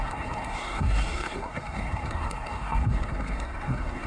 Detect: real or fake fake